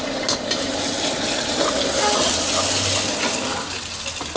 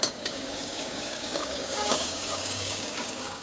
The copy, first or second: second